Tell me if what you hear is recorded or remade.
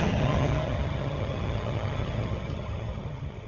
remade